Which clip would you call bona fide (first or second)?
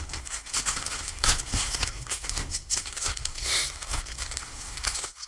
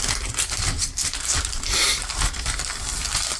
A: second